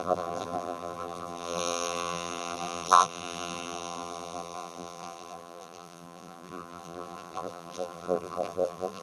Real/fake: fake